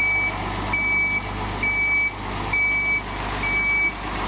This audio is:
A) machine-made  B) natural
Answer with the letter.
B